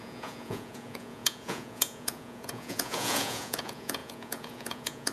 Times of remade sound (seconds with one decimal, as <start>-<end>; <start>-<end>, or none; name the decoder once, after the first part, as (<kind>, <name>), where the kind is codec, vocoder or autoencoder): 0.0-5.1 (vocoder, Vocos)